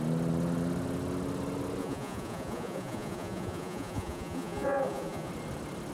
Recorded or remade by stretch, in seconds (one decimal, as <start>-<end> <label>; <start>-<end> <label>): 0.0-1.8 recorded; 1.8-5.3 remade; 5.3-5.9 recorded